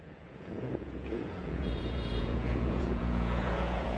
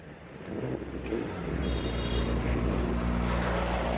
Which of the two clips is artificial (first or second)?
first